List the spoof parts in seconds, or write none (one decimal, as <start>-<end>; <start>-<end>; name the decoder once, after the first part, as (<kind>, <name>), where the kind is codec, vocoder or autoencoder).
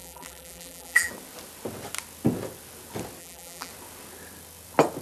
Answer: 0.0-1.1 (vocoder, BigVGAN v2); 3.2-3.7